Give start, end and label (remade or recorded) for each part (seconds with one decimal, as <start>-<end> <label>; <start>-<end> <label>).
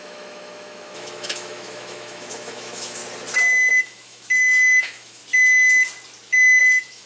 0.0-3.0 remade; 3.0-3.7 recorded; 3.7-5.2 remade; 5.2-6.6 recorded; 6.6-7.1 remade